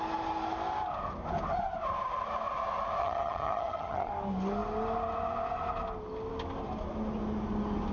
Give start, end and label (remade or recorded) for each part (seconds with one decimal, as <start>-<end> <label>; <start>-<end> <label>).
0.0-3.0 recorded; 3.0-4.1 remade; 4.1-7.9 recorded